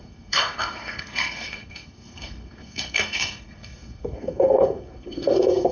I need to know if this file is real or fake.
fake